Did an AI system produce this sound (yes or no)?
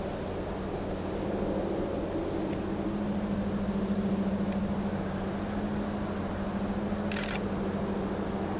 no